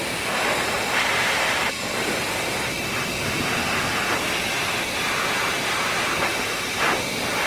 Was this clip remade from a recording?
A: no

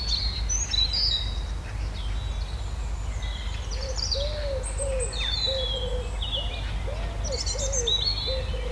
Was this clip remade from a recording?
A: no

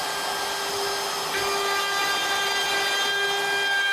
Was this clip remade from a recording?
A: no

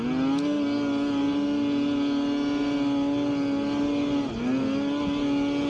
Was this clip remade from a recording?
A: no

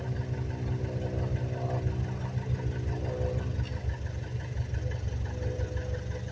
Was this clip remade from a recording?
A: no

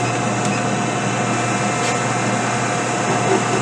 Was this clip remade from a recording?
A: no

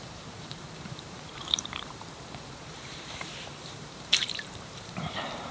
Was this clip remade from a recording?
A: yes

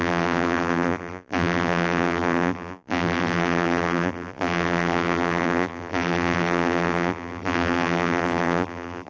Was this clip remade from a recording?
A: yes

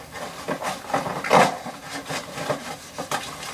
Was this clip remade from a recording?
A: no